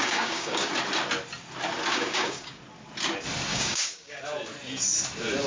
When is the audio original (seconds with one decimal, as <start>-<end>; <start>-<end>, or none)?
0.7-1.9; 2.6-3.5; 4.2-5.5